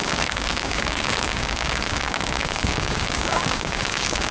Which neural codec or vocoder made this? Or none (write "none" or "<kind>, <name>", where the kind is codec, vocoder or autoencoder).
codec, DAC